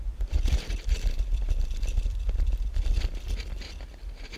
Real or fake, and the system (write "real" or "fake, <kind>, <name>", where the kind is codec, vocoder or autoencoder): real